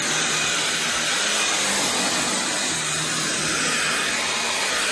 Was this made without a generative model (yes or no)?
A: yes